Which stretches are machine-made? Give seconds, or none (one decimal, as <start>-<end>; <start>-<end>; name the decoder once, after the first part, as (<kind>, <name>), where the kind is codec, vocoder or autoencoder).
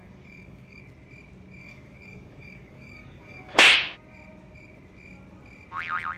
0.0-0.8 (codec, DAC); 1.6-3.6